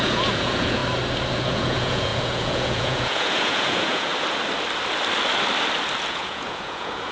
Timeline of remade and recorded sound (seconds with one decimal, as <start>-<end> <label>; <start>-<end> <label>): 0.0-0.8 remade; 0.8-1.3 recorded; 1.3-4.1 remade; 4.1-6.1 recorded; 6.1-7.1 remade